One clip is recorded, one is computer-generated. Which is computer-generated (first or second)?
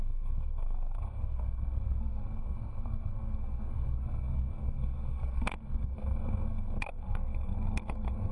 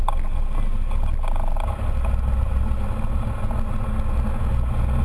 first